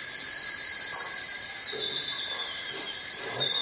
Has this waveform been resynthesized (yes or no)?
yes